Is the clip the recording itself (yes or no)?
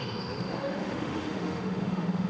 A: no